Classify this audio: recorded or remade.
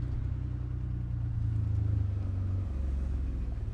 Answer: recorded